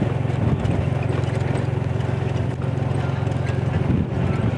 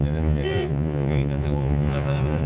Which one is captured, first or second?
first